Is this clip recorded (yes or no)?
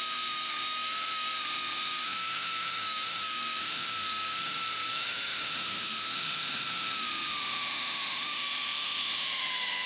no